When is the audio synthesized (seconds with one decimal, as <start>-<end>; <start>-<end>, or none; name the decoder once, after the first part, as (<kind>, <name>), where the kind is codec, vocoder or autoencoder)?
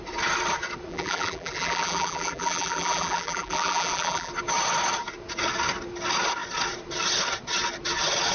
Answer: 0.9-4.3 (vocoder, BigVGAN v2)